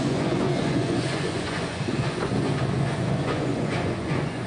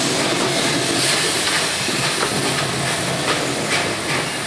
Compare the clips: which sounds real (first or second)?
second